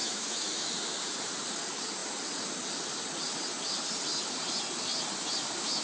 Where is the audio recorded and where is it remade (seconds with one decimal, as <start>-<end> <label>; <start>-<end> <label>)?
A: 0.0-0.7 remade; 0.7-5.8 recorded